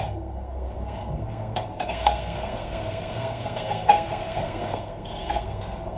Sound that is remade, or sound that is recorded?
remade